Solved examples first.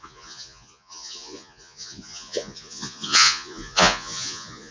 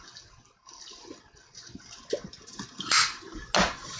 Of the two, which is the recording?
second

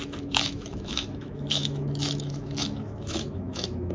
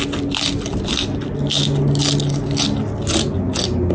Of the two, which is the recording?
second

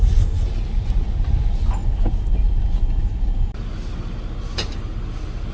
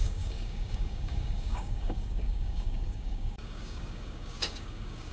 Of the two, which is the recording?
first